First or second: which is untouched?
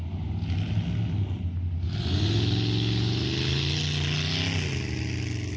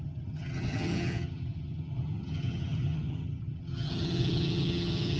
first